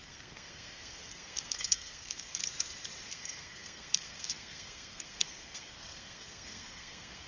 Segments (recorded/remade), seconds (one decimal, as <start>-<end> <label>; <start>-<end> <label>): 0.0-2.4 remade; 2.4-3.1 recorded; 3.1-7.3 remade